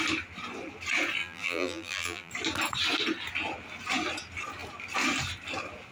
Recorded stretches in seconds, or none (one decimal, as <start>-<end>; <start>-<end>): 0.0-1.2; 2.3-5.9